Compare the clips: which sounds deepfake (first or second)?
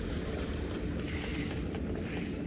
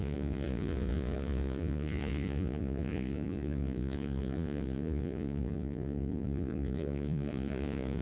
second